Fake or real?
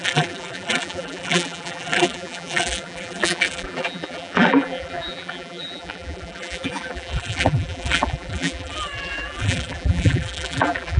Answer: fake